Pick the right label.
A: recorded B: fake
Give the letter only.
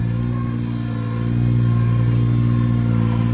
A